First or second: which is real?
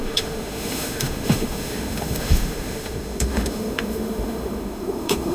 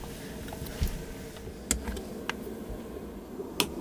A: second